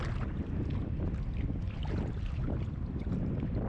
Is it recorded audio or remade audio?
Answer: recorded